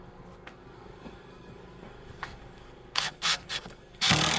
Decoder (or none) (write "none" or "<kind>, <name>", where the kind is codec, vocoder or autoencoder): codec, SNAC